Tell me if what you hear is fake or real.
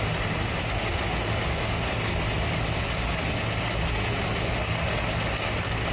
real